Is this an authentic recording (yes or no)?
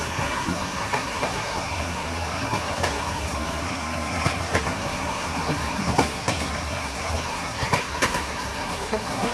no